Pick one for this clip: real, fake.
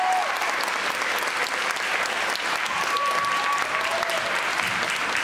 real